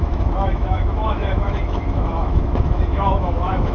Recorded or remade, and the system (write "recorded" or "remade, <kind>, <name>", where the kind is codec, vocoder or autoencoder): remade, autoencoder, DAC-VAE